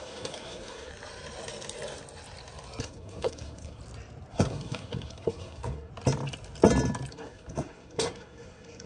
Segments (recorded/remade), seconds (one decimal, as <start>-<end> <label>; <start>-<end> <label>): 0.0-0.9 remade; 0.9-2.8 recorded; 2.8-3.8 remade; 3.8-4.3 recorded; 4.3-5.9 remade; 5.9-7.1 recorded; 7.1-8.9 remade